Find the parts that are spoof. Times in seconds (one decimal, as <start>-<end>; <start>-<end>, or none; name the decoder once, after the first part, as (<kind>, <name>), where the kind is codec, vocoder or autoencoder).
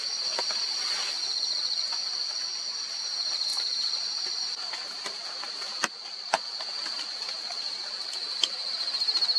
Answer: 3.5-4.7 (vocoder, BigVGAN v2)